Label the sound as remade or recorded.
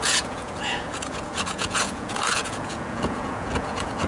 remade